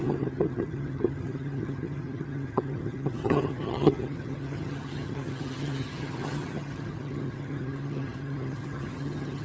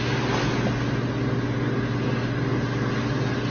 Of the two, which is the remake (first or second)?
first